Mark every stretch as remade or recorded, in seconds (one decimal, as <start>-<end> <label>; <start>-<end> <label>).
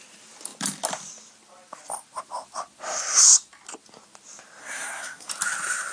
0.0-4.6 recorded; 4.6-5.3 remade; 5.3-5.9 recorded